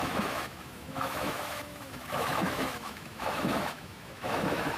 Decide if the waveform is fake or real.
fake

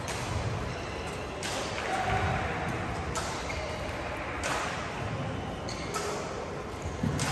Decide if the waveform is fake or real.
real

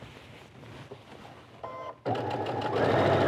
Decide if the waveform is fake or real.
real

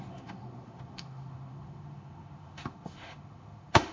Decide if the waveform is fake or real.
fake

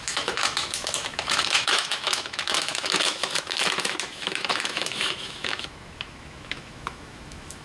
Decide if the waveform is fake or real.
fake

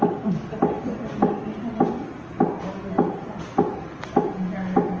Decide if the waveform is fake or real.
real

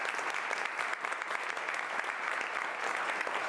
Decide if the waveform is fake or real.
real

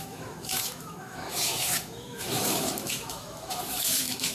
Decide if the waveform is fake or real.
fake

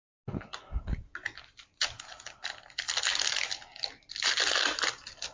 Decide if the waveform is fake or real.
real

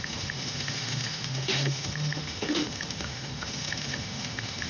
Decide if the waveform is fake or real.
fake